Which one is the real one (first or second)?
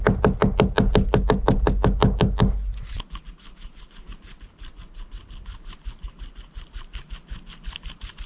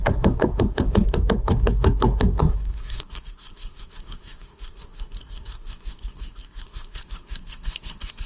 first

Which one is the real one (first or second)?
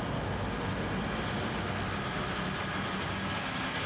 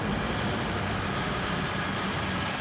first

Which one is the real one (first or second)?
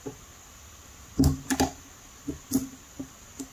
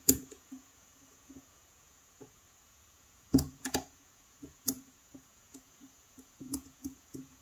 first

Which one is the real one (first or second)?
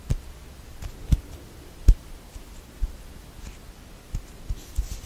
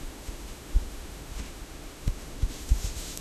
first